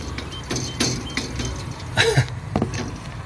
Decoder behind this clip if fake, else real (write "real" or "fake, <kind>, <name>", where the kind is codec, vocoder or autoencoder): real